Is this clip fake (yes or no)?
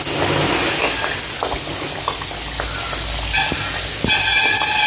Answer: no